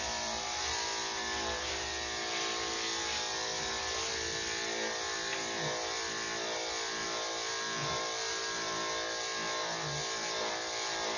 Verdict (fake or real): real